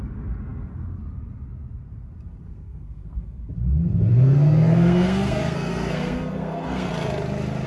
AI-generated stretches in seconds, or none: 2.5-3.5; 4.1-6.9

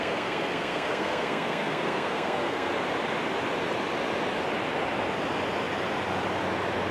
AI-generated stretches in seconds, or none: 0.0-2.7

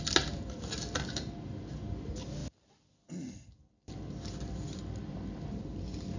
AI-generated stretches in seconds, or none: none

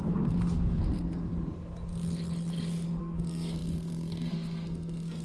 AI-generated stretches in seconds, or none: 0.0-1.3; 3.0-5.2

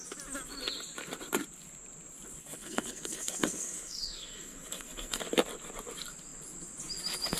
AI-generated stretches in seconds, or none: 2.4-5.2

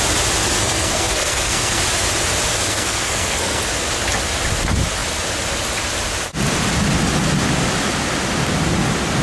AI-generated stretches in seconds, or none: 0.4-1.8; 2.5-3.7